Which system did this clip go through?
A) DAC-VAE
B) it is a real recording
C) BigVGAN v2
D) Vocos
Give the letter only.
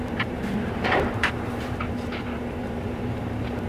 C